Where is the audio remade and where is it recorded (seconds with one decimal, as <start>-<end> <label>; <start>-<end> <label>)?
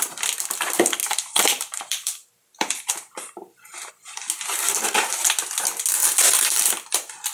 0.0-1.0 recorded; 1.0-3.9 remade; 3.9-6.0 recorded; 6.0-6.7 remade; 6.7-7.3 recorded